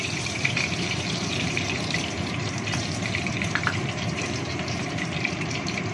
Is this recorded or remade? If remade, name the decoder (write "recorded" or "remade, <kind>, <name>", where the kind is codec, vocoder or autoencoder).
remade, vocoder, BigVGAN v2